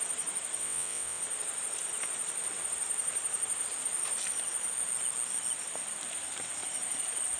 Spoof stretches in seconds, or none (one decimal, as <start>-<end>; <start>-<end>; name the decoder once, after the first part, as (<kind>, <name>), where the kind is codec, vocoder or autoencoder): 0.6-1.2 (vocoder, WaveNeXt)

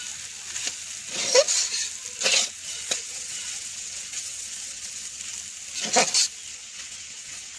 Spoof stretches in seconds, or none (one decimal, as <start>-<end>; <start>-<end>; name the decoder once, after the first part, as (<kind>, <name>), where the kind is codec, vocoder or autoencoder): 2.6-5.2 (vocoder, WaveNeXt); 6.5-7.6

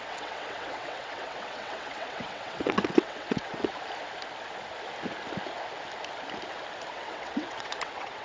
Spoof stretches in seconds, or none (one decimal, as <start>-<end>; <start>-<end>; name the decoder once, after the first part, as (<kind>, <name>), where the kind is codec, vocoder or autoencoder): 0.0-3.7 (vocoder, WaveNeXt); 6.9-8.2

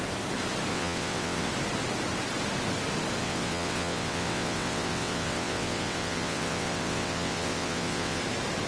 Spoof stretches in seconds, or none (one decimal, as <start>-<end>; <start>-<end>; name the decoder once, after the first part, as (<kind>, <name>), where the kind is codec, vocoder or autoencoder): 0.7-1.5 (vocoder, WaveNeXt); 3.2-8.2

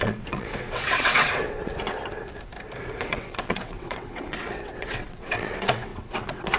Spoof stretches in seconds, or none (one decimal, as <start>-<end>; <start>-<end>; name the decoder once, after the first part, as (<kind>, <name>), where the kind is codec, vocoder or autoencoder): 0.0-1.7 (vocoder, WaveNeXt); 3.0-6.6

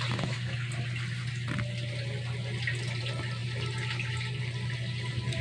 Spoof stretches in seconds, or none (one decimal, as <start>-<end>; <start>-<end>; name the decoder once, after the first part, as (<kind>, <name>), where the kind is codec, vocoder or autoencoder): none